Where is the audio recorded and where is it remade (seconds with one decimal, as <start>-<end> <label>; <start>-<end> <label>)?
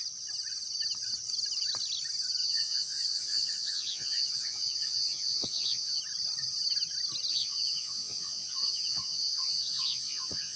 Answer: 0.0-2.4 recorded; 2.4-6.0 remade; 6.0-7.3 recorded; 7.3-10.6 remade